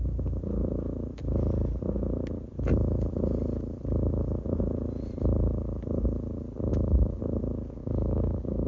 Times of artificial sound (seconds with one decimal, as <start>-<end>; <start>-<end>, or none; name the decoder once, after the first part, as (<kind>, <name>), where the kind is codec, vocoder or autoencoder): 6.7-7.2 (codec, DAC); 7.8-8.7